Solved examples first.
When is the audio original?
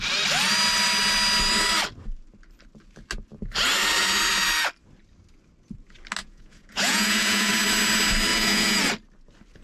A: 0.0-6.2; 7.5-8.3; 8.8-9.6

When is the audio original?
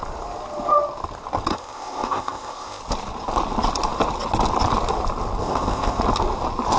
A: 0.0-1.5; 2.8-5.4; 6.0-6.8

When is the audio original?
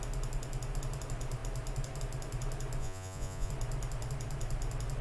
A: 0.0-2.8; 3.5-5.0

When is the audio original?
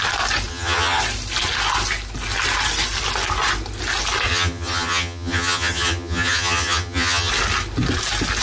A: 0.0-0.5; 1.0-4.3; 7.3-8.4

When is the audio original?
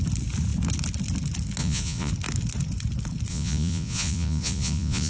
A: 0.0-1.6; 2.1-3.3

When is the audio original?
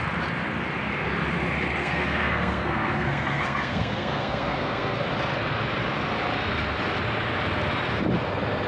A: 0.0-1.8; 5.1-8.7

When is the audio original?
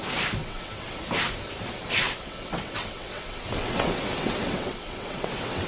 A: 0.0-0.4; 1.0-2.0